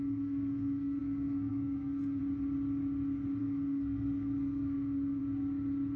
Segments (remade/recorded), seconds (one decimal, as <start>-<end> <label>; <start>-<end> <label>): 0.0-2.2 remade; 2.2-3.4 recorded; 3.4-5.2 remade; 5.2-6.0 recorded